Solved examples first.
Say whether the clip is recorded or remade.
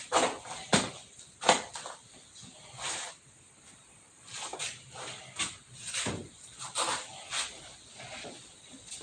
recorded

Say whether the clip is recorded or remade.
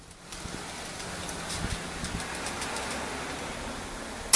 recorded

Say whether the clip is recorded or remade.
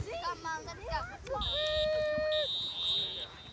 recorded